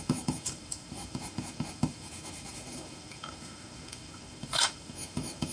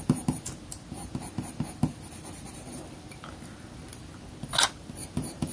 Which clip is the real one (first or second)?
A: second